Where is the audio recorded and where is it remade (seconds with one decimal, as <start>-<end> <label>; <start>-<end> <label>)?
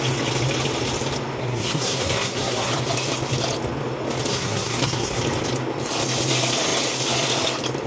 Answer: 0.0-1.4 recorded; 1.4-2.7 remade; 2.7-4.3 recorded; 4.3-5.2 remade; 5.2-7.9 recorded